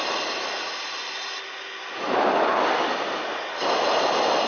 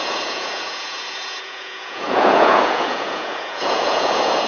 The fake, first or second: second